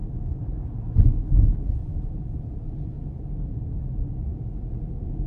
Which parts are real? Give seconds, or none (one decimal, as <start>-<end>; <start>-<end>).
0.0-1.8; 2.9-5.3